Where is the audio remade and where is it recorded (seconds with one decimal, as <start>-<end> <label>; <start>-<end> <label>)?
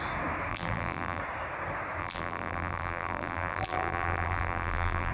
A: 0.0-0.5 recorded; 0.5-1.2 remade; 1.2-2.0 recorded; 2.0-5.1 remade